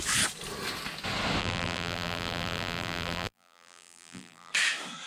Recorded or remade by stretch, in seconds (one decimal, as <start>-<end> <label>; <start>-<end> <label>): 0.0-1.4 recorded; 1.4-4.5 remade; 4.5-5.1 recorded